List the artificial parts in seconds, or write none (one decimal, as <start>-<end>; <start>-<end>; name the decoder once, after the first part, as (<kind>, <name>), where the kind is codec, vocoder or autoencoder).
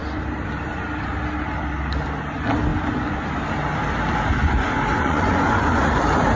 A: 4.4-6.0 (vocoder, Vocos)